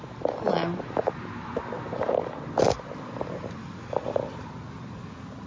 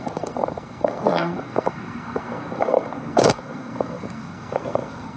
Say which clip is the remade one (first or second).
second